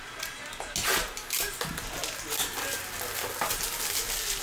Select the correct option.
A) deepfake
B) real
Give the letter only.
B